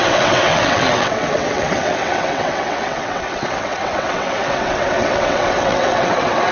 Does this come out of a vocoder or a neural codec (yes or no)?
yes